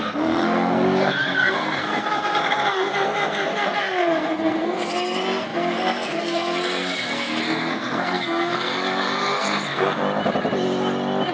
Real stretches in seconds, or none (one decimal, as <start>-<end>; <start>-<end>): 10.0-11.3